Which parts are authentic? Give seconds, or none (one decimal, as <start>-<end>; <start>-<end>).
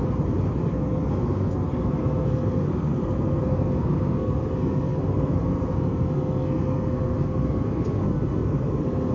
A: 0.0-0.7